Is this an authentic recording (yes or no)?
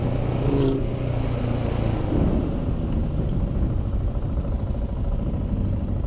yes